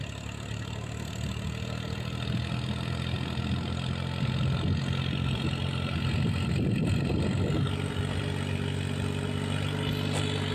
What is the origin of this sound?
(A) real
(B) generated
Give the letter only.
A